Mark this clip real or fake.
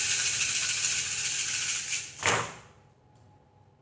real